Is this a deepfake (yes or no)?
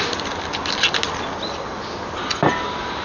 no